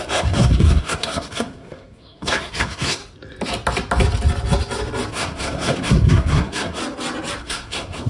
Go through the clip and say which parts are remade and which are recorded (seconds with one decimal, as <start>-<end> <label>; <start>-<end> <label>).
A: 0.0-3.0 remade; 3.0-5.1 recorded; 5.1-6.8 remade; 6.8-7.4 recorded; 7.4-8.1 remade